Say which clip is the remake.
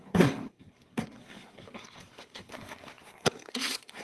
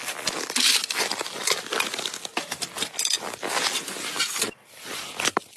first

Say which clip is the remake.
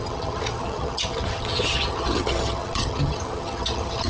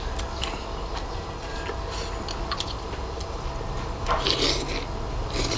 first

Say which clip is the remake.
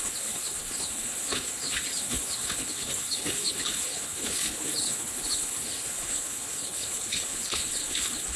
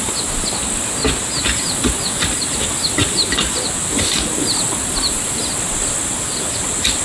first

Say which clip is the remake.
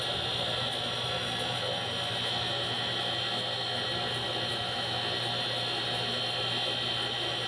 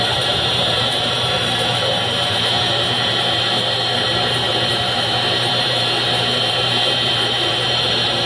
second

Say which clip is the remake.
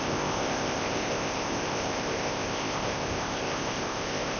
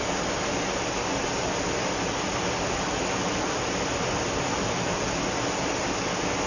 first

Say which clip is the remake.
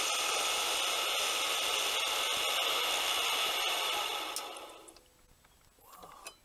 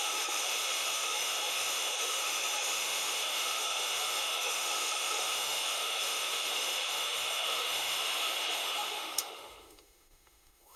second